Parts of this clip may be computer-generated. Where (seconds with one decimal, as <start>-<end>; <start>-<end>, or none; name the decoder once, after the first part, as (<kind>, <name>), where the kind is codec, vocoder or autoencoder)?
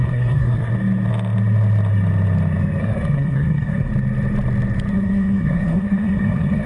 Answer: 0.0-0.7 (codec, SNAC); 2.8-3.9; 4.9-6.7